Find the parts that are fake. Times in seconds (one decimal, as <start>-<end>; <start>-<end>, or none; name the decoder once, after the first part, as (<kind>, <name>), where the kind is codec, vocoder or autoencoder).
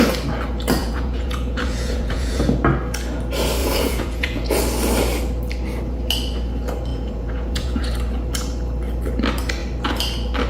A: 0.8-2.4 (vocoder, Vocos); 3.6-4.6; 6.9-7.8